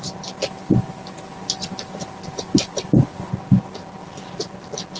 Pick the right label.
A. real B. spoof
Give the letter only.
A